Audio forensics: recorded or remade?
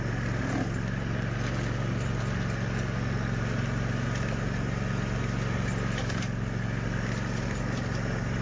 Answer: recorded